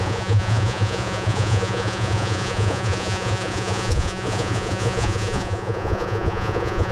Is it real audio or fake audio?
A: fake